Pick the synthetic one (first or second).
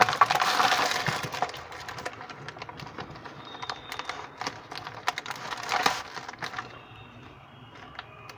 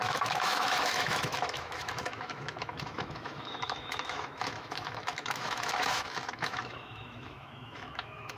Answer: second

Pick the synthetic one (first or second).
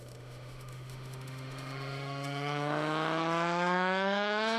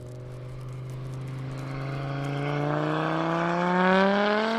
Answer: first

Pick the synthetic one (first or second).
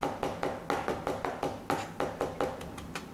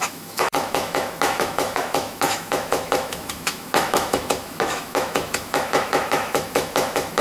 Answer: second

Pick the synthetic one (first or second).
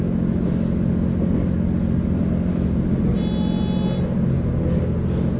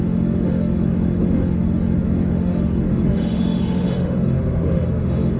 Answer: second